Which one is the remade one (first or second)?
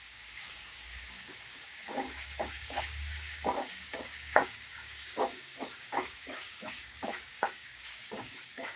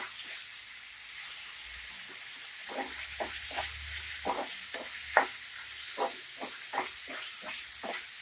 first